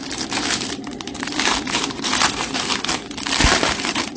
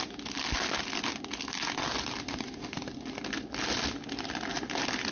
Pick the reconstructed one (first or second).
first